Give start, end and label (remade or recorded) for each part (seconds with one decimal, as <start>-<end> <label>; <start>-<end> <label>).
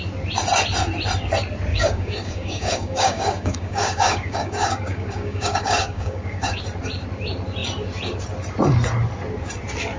0.0-1.7 recorded; 1.7-6.6 remade; 6.6-10.0 recorded